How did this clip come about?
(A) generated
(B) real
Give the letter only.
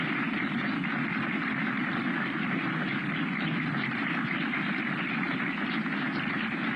B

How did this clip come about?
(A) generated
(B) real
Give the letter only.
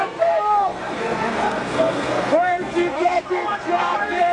A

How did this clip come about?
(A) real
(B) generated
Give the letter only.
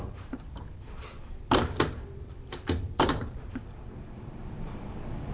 B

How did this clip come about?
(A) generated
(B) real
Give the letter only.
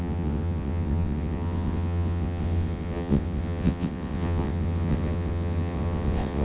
A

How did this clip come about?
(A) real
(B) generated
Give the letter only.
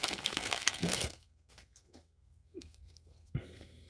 B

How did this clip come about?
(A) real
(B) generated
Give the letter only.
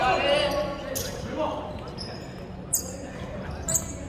A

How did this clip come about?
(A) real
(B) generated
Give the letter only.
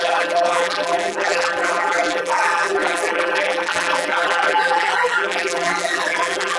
B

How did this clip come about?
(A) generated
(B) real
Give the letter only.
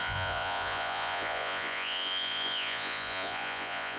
A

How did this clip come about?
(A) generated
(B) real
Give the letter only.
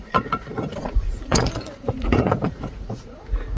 A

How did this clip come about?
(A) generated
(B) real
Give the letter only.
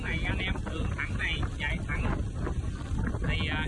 B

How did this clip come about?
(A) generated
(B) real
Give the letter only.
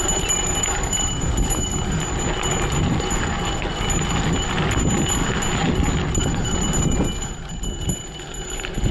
B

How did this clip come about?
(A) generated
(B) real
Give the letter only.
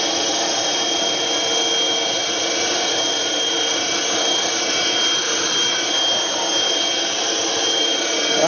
B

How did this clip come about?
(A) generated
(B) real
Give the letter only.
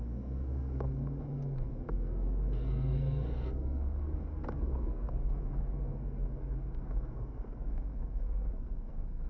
A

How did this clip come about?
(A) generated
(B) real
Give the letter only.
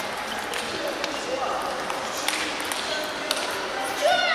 B